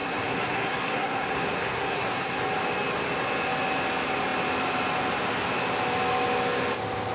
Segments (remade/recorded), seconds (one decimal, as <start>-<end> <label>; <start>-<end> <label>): 0.0-2.4 remade; 2.4-7.1 recorded